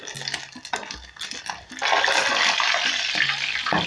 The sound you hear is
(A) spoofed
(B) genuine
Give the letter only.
B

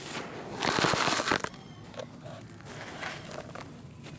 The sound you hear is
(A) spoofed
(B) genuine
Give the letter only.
B